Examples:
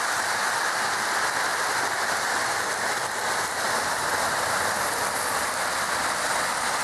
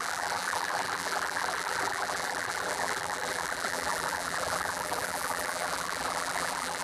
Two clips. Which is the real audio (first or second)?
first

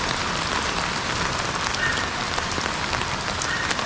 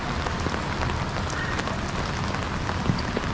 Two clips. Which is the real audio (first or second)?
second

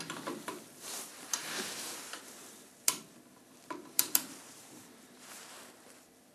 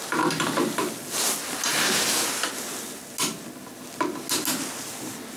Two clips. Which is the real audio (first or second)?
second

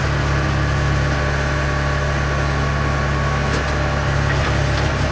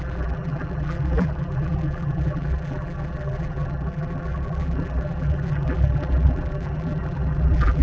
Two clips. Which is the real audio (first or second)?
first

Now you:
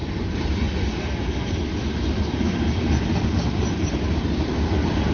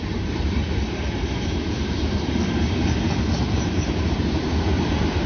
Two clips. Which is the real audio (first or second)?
first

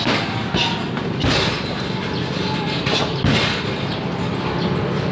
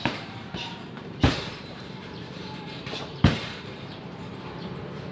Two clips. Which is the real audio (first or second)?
first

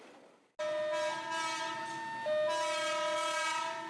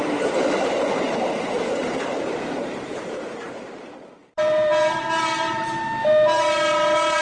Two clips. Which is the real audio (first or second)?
first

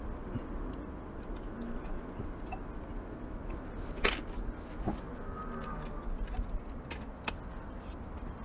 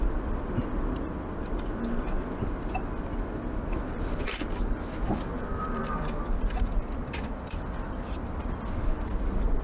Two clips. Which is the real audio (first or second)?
first